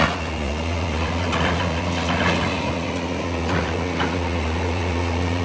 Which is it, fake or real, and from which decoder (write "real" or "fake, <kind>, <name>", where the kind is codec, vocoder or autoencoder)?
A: fake, vocoder, Vocos